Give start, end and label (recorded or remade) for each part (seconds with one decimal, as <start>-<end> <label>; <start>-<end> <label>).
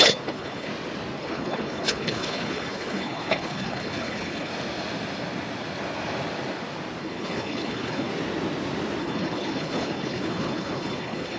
0.0-0.7 remade; 0.7-1.2 recorded; 1.2-4.5 remade; 4.5-7.0 recorded; 7.0-8.1 remade; 8.1-9.0 recorded; 9.0-11.4 remade